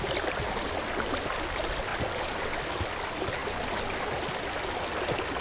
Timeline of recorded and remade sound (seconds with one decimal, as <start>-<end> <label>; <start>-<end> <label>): 0.0-5.4 recorded